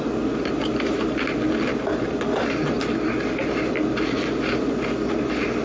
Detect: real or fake real